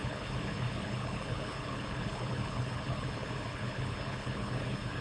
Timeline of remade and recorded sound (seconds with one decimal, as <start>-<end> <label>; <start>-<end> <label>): 0.0-5.0 remade